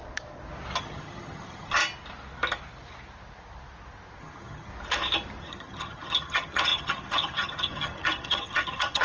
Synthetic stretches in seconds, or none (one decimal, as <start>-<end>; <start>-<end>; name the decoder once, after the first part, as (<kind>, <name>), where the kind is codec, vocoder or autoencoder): 0.8-1.8 (vocoder, HiFi-GAN); 4.2-4.7; 5.4-9.0

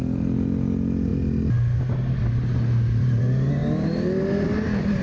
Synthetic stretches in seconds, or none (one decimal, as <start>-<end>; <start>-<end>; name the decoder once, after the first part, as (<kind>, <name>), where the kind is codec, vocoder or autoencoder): none

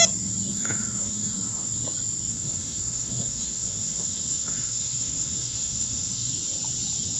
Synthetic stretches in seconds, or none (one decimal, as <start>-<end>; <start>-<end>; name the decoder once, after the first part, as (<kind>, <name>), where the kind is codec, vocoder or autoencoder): 0.5-1.7 (autoencoder, DAC-VAE); 2.3-6.3